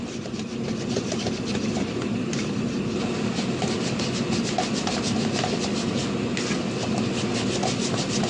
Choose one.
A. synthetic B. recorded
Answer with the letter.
B